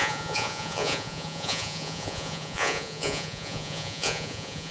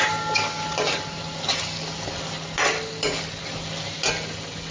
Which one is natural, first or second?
second